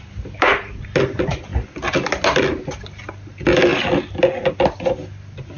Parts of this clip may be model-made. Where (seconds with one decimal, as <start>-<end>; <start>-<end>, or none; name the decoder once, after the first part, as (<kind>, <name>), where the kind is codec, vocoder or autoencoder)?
none